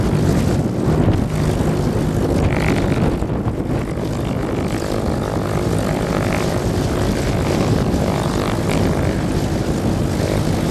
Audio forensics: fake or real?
real